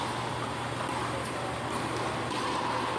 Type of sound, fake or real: real